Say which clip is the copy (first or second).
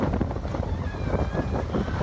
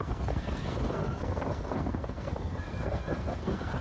second